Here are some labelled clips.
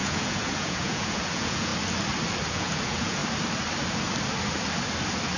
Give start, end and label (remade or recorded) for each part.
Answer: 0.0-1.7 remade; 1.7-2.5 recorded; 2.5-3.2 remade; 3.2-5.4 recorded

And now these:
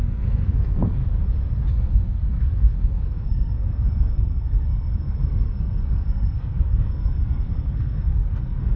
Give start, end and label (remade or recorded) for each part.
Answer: 0.0-1.0 remade; 1.0-1.7 recorded; 1.7-8.8 remade

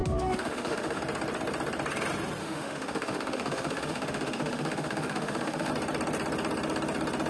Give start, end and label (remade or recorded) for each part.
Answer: 0.0-1.0 remade; 1.0-2.4 recorded; 2.4-5.7 remade; 5.7-7.3 recorded

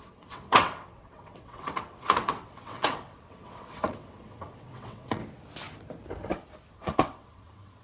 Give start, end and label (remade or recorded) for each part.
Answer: 0.0-5.2 remade; 5.2-6.7 recorded; 6.7-7.8 remade

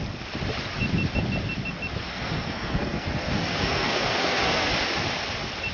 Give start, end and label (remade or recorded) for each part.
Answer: 0.0-2.1 recorded; 2.1-4.7 remade; 4.7-5.7 recorded